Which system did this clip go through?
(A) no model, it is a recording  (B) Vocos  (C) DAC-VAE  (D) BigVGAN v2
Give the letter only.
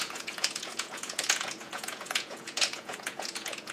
B